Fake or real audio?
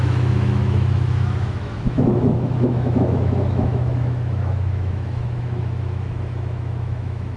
fake